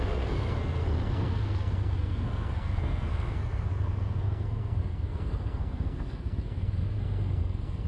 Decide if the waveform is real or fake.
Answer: fake